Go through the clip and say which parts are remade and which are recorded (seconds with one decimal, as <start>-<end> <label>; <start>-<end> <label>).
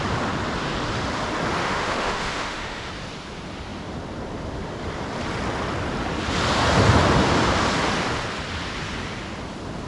0.0-1.6 recorded; 1.6-2.9 remade; 2.9-9.9 recorded